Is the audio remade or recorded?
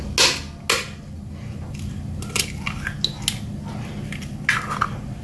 recorded